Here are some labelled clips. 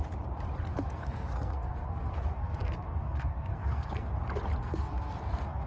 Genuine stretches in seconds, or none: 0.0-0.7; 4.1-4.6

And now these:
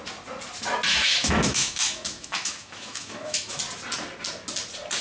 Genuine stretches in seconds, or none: 0.0-0.9; 3.6-5.0